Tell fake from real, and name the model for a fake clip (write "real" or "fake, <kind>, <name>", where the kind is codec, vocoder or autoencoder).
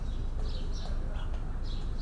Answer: real